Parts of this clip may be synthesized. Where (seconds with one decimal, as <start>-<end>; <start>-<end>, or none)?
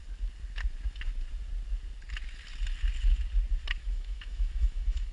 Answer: 3.8-5.1